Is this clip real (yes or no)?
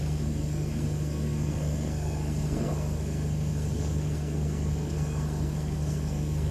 no